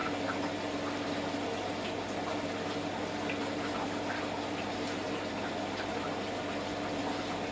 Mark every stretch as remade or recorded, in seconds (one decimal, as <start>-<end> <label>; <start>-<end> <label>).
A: 0.0-7.5 recorded